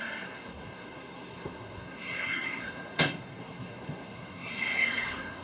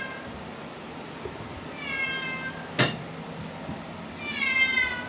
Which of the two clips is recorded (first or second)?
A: second